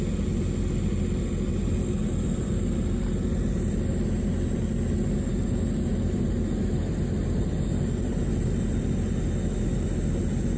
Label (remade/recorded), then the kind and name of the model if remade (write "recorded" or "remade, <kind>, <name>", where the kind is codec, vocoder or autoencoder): recorded